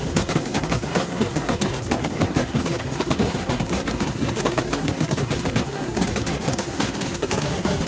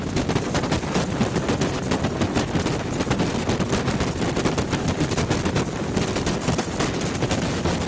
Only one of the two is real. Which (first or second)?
second